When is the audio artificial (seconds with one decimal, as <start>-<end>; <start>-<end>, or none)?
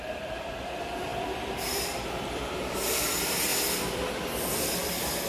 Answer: 0.0-3.5; 4.5-5.3